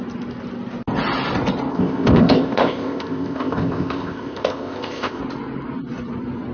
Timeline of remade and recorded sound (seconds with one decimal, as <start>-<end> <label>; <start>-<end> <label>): 0.0-1.7 recorded; 1.7-5.2 remade; 5.2-6.5 recorded